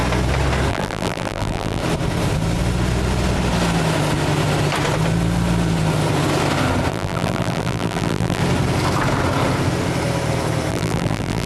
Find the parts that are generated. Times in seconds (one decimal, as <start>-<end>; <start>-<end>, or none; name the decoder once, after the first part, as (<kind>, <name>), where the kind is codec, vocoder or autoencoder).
0.7-1.8 (vocoder, BigVGAN v2); 6.9-8.4; 10.7-11.5